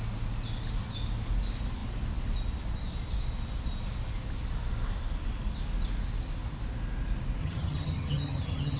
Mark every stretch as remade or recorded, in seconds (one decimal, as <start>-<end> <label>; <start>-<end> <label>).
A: 0.0-7.4 recorded; 7.4-8.8 remade